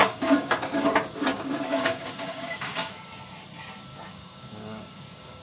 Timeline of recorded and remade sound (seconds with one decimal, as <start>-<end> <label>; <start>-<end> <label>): 0.0-0.9 remade; 0.9-1.3 recorded; 1.3-2.9 remade; 2.9-3.9 recorded; 3.9-5.4 remade